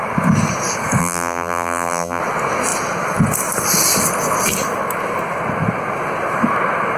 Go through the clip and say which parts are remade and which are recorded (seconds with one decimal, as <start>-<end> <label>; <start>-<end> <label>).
0.0-1.0 recorded; 1.0-2.2 remade; 2.2-7.0 recorded